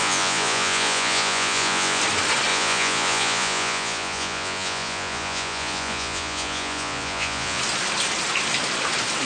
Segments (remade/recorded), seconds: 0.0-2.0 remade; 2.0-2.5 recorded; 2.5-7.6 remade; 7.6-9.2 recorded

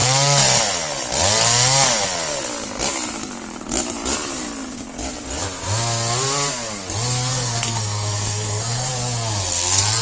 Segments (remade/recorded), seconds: 0.0-7.3 recorded; 7.3-8.9 remade; 8.9-10.0 recorded

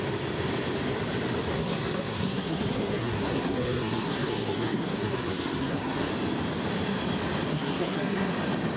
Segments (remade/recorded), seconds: 0.0-1.5 recorded; 1.5-6.1 remade; 6.1-7.5 recorded; 7.5-8.3 remade; 8.3-8.8 recorded

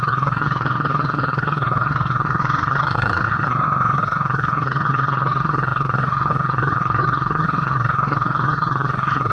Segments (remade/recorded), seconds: 0.0-9.3 remade